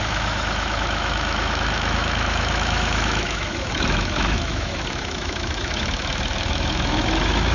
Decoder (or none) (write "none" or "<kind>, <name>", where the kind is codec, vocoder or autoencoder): autoencoder, DAC-VAE